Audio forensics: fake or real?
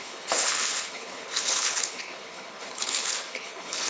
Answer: fake